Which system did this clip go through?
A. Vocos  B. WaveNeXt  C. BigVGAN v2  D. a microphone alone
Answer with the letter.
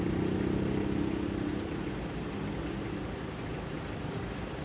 D